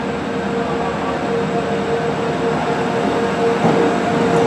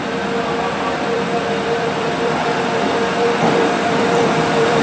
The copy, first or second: second